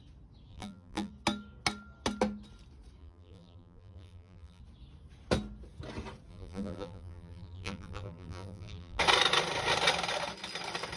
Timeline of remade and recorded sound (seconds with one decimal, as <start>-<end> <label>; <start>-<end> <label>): 0.0-0.5 recorded; 0.5-1.1 remade; 1.1-3.0 recorded; 3.0-4.6 remade; 4.6-6.3 recorded; 6.3-9.0 remade; 9.0-11.0 recorded